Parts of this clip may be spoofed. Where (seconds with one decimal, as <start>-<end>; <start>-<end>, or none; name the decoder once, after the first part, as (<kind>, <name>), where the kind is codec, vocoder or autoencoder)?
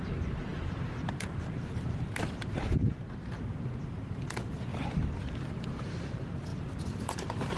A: 0.0-4.7 (vocoder, BigVGAN v2); 5.6-7.6